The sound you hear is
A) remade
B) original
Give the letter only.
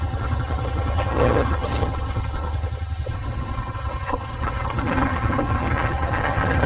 A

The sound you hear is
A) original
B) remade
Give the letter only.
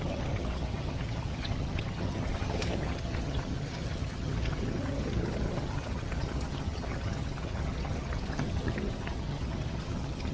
B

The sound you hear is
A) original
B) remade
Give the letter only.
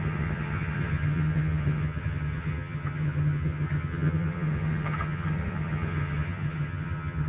B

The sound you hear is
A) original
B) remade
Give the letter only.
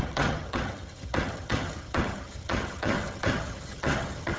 B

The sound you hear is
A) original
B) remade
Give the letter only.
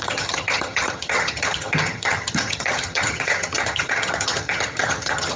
B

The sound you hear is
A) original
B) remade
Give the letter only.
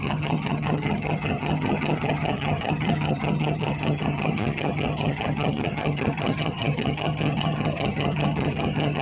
B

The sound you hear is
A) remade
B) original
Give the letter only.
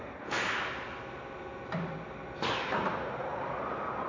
B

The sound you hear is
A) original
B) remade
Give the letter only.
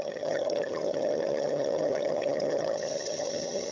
B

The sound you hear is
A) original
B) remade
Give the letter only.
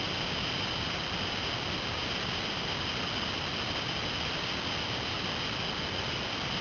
A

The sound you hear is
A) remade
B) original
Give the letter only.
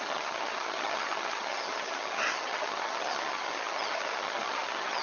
A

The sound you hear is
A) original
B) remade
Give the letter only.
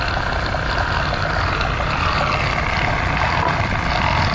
A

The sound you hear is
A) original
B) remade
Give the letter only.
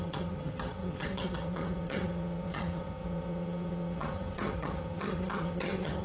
B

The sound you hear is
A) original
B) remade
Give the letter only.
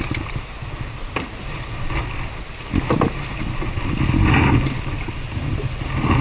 A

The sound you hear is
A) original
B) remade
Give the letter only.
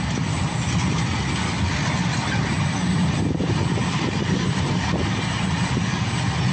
A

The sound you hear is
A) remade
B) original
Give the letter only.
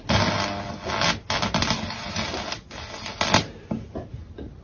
B